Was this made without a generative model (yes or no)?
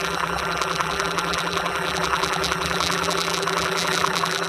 no